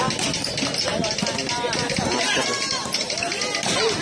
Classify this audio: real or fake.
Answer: real